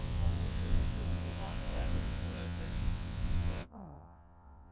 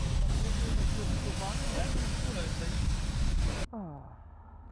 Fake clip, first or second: first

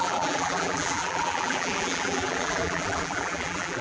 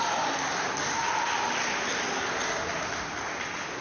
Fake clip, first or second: first